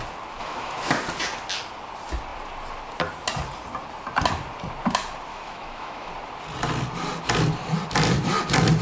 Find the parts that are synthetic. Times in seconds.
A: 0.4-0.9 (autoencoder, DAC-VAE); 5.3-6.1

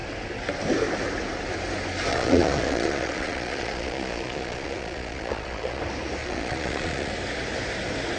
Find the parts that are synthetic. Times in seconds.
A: 2.1-5.8 (vocoder, Vocos); 6.2-7.1

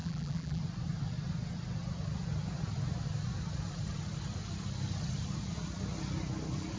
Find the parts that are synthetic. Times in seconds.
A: 0.0-0.6 (vocoder, BigVGAN v2)

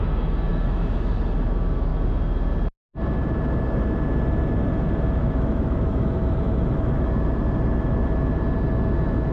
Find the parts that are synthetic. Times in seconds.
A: 0.5-1.1 (autoencoder, DAC-VAE); 5.2-7.0